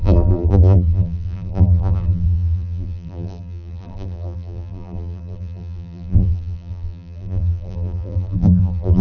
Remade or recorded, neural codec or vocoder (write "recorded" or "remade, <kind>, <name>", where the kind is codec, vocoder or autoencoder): remade, vocoder, BigVGAN v2